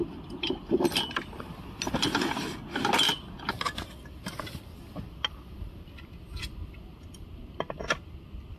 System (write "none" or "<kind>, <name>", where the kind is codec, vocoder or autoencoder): none